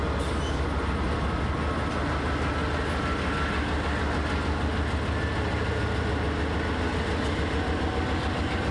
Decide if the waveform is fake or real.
real